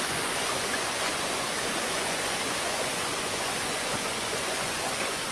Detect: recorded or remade remade